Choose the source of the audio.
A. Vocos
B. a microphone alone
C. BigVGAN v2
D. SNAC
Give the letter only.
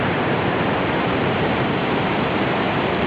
C